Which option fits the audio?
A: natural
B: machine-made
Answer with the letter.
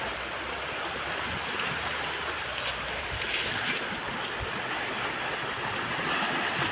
A